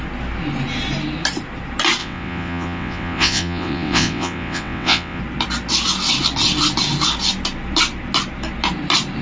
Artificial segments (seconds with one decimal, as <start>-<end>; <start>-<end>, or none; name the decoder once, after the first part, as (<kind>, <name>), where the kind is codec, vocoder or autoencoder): 2.0-5.2 (vocoder, WaveNeXt)